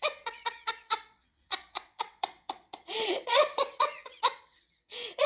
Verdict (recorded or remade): remade